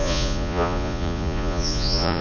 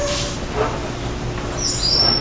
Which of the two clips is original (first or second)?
second